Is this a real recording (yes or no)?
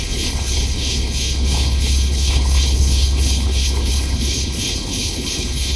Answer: no